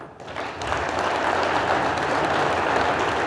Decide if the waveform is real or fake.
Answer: real